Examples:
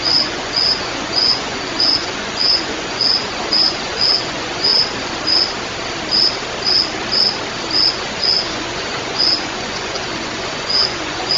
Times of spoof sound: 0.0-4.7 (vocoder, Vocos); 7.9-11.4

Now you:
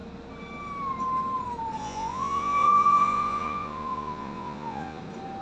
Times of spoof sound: 1.8-5.0 (vocoder, Vocos)

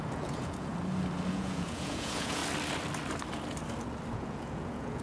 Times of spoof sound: 0.0-0.7 (vocoder, Vocos); 1.3-2.4; 4.1-5.0